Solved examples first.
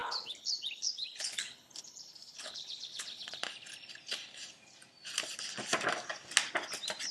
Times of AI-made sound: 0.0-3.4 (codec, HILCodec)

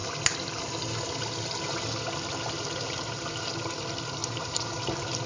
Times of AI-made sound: 4.2-4.8 (vocoder, BigVGAN v2)

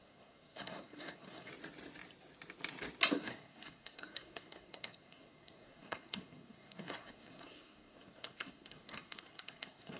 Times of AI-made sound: 0.0-1.5 (codec, SNAC); 3.1-10.0

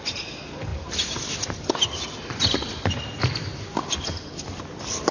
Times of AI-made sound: 0.7-1.8 (vocoder, BigVGAN v2)

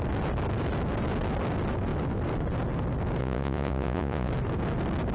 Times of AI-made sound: 3.2-4.3 (vocoder, Vocos)